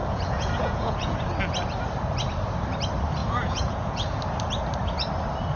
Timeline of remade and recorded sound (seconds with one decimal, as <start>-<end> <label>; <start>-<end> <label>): 0.0-1.2 remade; 1.2-3.2 recorded; 3.2-4.2 remade; 4.2-5.6 recorded